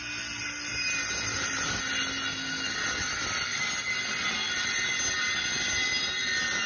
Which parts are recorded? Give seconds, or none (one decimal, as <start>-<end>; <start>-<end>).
0.0-6.7